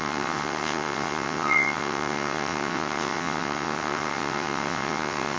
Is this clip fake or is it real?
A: fake